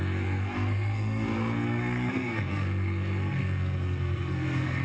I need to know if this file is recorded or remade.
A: remade